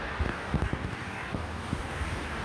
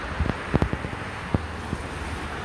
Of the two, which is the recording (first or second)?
second